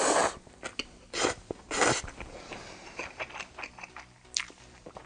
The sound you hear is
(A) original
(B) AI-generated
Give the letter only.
A